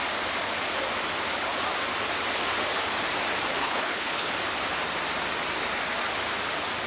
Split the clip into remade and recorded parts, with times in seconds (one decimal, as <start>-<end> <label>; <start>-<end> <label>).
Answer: 0.0-3.6 recorded; 3.6-4.3 remade; 4.3-6.9 recorded

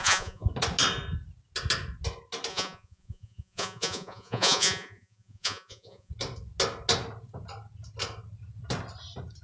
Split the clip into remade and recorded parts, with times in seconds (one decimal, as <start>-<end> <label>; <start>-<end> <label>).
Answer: 0.0-0.5 remade; 0.5-2.5 recorded; 2.5-6.1 remade; 6.1-9.4 recorded

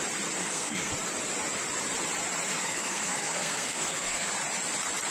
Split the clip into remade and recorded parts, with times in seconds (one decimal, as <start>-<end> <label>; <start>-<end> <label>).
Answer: 0.0-0.4 recorded; 0.4-0.9 remade; 0.9-2.5 recorded; 2.5-4.3 remade; 4.3-5.1 recorded